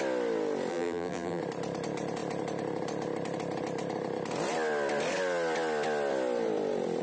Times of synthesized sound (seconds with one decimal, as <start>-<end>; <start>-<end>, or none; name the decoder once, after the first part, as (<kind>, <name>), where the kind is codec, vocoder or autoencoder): 0.7-1.4 (vocoder, BigVGAN v2)

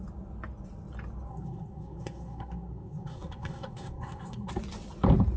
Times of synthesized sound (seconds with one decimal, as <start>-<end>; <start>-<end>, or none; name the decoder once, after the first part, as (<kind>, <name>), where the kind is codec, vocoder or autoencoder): 1.3-4.5 (codec, SNAC)

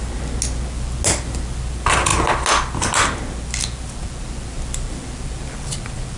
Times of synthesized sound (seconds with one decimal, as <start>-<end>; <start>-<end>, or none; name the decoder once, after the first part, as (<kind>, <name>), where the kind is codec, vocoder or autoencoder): none

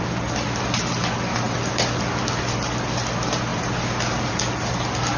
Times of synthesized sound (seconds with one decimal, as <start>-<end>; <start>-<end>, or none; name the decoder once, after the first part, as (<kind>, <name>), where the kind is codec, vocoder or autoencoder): none

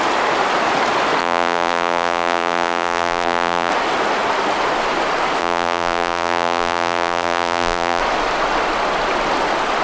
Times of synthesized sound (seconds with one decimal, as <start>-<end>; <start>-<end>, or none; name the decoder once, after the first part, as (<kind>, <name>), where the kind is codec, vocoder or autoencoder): 1.2-3.7 (vocoder, BigVGAN v2); 5.4-8.0